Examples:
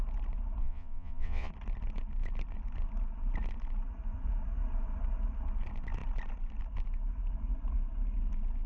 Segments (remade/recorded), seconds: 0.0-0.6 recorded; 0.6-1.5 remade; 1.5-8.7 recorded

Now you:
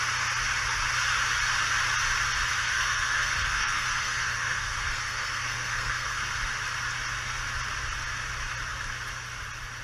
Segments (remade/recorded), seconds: 0.0-2.6 recorded; 2.6-6.2 remade; 6.2-9.8 recorded

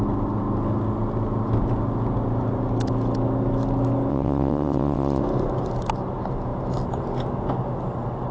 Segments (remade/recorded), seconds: 0.0-4.1 recorded; 4.1-5.2 remade; 5.2-8.3 recorded